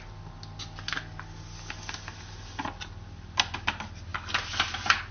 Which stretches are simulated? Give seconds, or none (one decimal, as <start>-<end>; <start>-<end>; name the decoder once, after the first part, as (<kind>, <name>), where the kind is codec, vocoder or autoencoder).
none